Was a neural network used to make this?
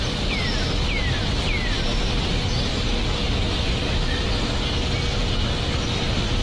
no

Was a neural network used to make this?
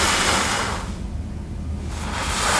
no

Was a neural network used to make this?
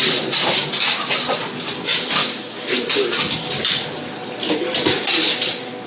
no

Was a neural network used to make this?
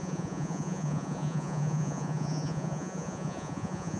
yes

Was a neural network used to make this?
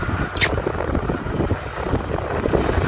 no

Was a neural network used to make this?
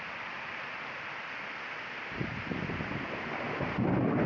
no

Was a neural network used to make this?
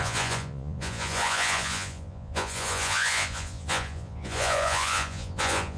yes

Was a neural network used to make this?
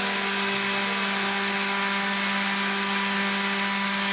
no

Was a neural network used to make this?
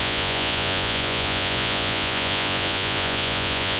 yes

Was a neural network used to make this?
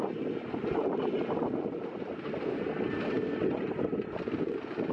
no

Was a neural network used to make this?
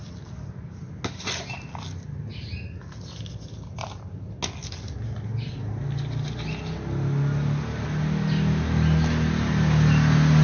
no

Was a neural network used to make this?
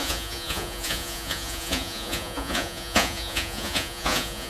yes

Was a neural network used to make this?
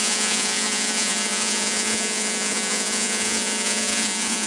yes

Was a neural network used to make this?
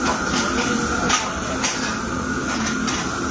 no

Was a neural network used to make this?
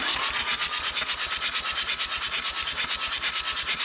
no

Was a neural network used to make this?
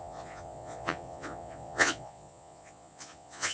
yes